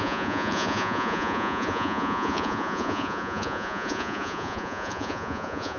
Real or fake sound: fake